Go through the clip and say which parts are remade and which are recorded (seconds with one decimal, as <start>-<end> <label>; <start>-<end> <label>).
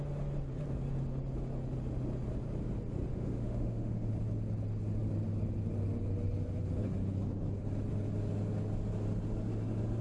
0.0-3.1 recorded; 3.1-4.1 remade; 4.1-10.0 recorded